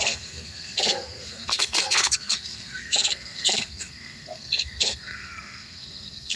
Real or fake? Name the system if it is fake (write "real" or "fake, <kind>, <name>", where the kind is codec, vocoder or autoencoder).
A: fake, codec, SNAC